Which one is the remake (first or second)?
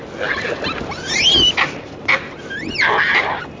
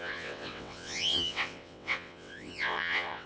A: second